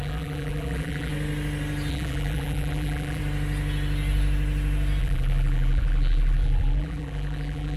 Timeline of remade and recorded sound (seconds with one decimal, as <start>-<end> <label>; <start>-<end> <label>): 0.0-1.1 remade; 1.1-1.9 recorded; 1.9-3.2 remade; 3.2-5.0 recorded; 5.0-7.8 remade